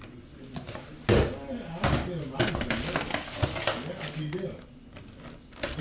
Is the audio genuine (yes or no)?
yes